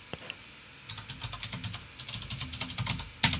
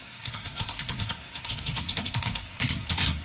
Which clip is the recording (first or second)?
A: first